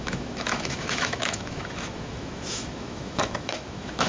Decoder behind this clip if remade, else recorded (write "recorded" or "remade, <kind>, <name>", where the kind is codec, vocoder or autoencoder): remade, autoencoder, DAC-VAE